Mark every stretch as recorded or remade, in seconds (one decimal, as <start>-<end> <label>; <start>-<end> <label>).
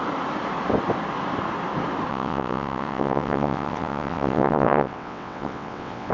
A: 0.0-2.1 recorded; 2.1-6.1 remade